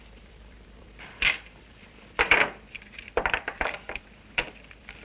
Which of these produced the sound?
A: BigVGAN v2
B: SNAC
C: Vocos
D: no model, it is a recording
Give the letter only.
A